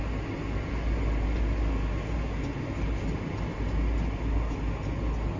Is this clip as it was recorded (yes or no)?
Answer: yes